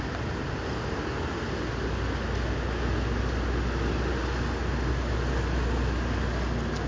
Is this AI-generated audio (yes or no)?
no